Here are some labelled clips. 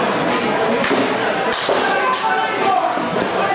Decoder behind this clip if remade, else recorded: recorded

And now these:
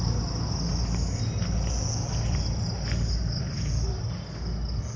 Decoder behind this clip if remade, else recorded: recorded